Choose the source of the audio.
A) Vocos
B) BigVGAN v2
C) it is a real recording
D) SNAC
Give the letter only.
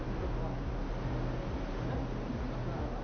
C